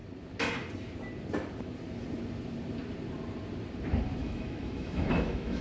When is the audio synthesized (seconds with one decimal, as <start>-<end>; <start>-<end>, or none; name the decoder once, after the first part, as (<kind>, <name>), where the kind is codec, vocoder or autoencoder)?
4.2-5.6 (autoencoder, DAC-VAE)